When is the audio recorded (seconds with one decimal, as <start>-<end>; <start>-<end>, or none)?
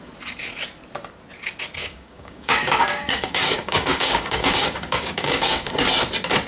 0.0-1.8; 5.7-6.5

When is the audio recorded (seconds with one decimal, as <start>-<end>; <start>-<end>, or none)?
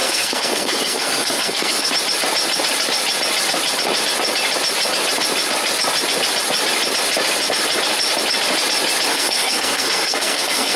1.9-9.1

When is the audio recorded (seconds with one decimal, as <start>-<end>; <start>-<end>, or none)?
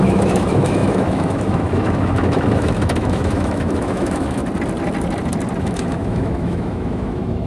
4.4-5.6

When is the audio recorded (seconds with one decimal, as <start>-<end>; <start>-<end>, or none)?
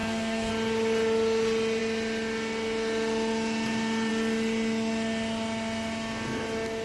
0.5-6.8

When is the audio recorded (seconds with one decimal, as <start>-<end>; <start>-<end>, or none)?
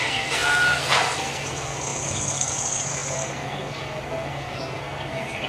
none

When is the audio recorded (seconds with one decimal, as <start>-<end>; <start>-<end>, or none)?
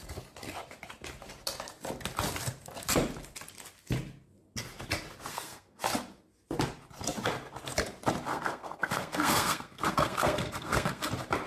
0.0-5.3; 5.8-8.3; 11.1-11.5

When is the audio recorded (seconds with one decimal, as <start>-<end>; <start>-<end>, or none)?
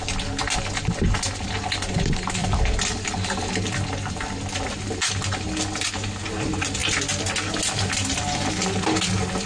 0.0-2.4; 3.5-9.5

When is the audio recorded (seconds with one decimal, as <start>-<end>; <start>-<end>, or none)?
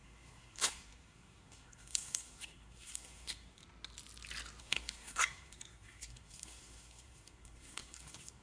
3.6-4.6